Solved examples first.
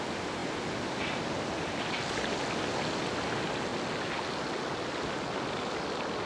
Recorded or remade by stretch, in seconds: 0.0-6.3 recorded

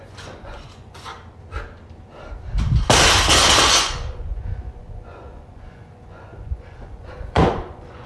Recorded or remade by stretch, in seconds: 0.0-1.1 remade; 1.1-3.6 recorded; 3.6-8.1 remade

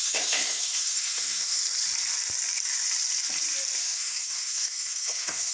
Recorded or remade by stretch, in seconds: 0.0-1.6 remade; 1.6-3.8 recorded; 3.8-5.5 remade

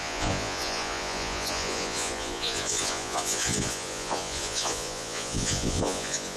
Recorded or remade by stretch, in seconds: 0.0-6.4 remade

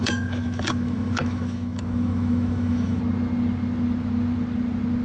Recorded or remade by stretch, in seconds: 0.0-3.0 remade; 3.0-5.0 recorded